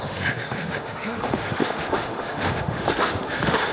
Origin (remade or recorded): remade